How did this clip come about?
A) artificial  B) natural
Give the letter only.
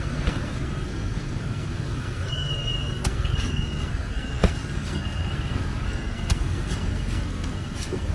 A